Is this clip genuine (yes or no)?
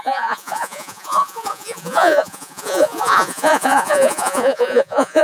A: no